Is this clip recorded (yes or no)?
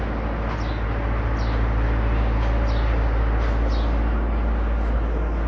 yes